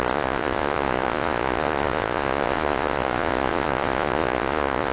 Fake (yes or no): yes